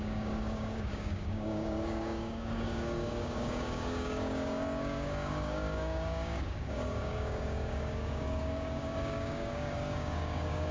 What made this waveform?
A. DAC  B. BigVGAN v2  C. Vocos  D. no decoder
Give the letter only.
A